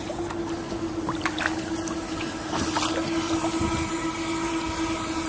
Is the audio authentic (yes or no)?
yes